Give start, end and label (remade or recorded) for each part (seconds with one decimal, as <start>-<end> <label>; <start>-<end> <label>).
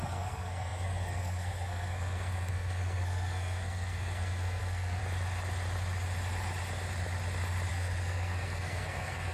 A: 0.0-5.0 remade; 5.0-7.7 recorded; 7.7-9.3 remade